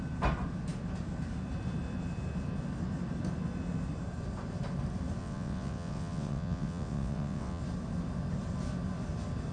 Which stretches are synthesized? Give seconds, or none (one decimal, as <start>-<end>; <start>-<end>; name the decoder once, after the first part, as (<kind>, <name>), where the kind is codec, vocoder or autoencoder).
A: 5.2-7.6 (vocoder, WaveNeXt)